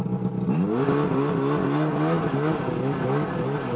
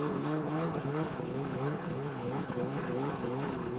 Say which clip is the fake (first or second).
second